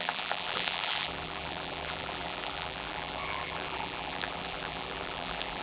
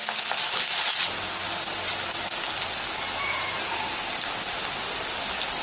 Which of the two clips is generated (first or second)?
first